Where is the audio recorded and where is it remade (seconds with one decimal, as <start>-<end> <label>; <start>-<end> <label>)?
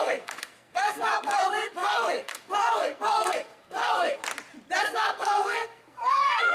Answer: 0.0-4.2 remade; 4.2-4.8 recorded; 4.8-6.5 remade